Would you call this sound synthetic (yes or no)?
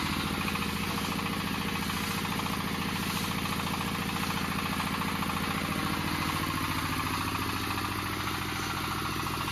no